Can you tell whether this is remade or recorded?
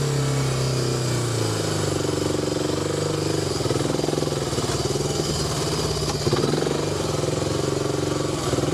recorded